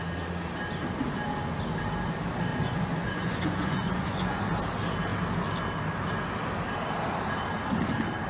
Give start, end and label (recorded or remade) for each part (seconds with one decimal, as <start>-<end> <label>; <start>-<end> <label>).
0.0-2.5 recorded; 2.5-4.4 remade; 4.4-8.3 recorded